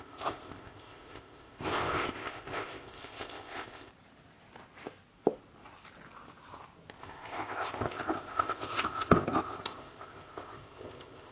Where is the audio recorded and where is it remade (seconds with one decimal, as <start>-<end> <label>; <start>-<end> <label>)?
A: 0.0-3.9 remade; 3.9-7.0 recorded; 7.0-11.3 remade